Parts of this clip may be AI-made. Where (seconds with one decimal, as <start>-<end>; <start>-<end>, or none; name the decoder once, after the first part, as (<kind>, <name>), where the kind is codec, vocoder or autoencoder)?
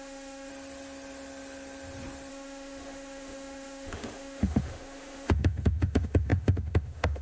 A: 0.0-0.5 (autoencoder, DAC-VAE); 2.3-7.2